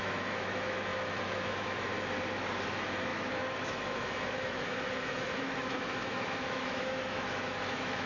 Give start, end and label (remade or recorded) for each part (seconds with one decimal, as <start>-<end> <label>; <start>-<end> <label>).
0.0-1.9 remade; 1.9-2.7 recorded; 2.7-8.1 remade